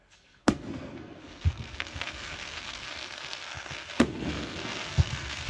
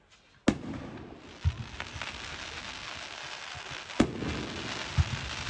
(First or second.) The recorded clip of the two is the second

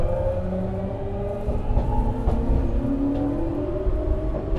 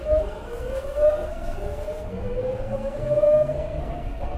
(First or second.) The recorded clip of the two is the first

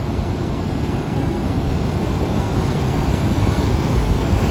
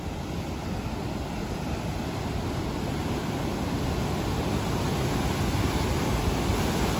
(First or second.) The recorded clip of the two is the second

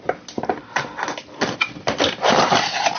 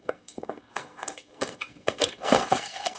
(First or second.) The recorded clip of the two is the first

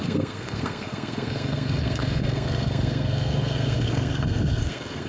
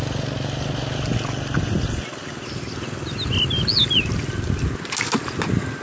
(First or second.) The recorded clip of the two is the second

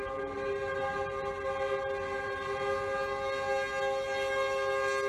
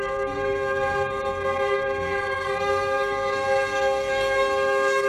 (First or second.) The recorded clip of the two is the first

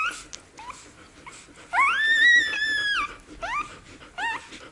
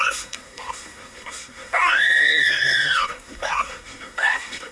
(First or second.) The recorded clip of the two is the first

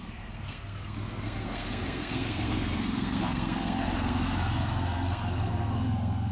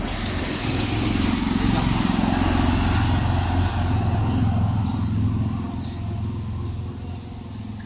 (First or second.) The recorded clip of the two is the second